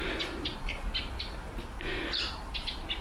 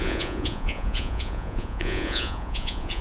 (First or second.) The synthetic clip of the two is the second